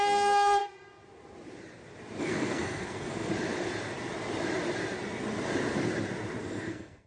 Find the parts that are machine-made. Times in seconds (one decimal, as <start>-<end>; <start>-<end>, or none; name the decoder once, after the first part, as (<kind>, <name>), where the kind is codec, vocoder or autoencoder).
0.0-0.6 (codec, SNAC); 2.2-3.3; 6.4-7.1